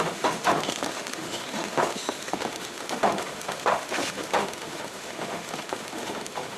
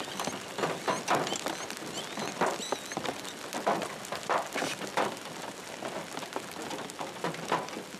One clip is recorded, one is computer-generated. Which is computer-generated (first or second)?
first